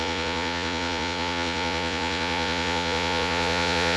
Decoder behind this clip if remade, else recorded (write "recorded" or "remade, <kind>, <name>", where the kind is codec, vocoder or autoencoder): remade, vocoder, Vocos